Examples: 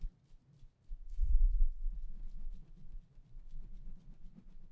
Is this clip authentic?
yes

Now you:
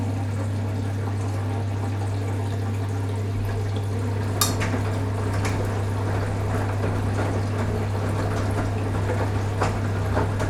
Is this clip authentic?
yes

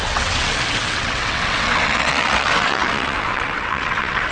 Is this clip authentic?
no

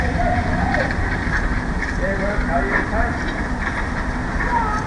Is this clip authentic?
no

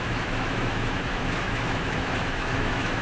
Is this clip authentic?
no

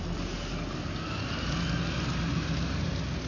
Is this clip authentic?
yes